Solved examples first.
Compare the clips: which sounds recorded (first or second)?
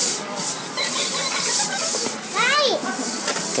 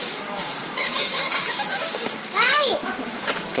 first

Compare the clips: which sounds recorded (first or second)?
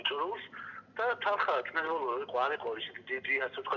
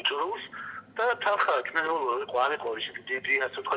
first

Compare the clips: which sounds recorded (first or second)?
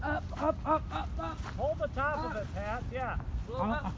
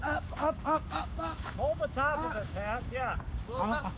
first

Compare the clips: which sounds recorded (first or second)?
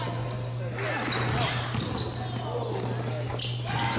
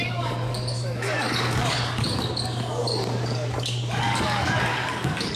first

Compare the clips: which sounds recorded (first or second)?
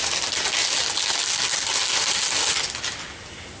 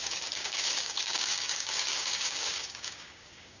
first